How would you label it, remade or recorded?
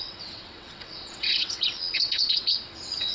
remade